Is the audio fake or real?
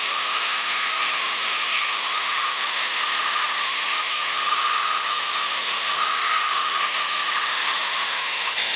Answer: fake